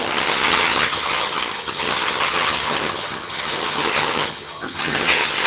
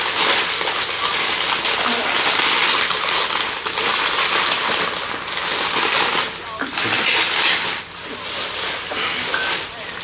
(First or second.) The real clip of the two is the second